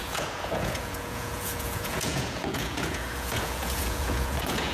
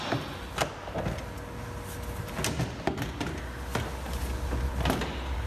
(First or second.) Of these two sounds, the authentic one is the second